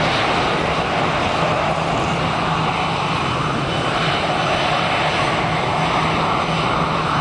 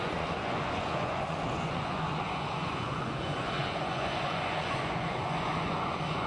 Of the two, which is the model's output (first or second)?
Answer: second